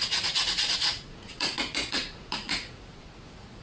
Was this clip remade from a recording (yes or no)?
yes